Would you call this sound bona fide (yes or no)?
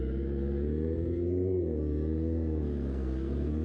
no